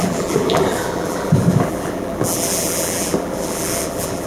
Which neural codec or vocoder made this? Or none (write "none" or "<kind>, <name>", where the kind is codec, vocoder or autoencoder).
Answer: vocoder, BigVGAN v2